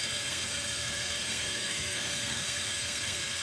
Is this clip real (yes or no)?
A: no